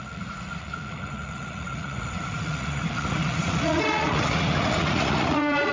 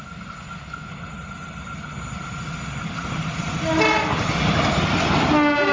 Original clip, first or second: second